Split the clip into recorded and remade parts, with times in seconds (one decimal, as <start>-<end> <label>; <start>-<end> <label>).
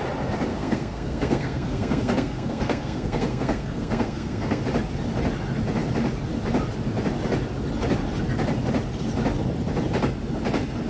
0.0-0.5 recorded; 0.5-4.6 remade; 4.6-10.9 recorded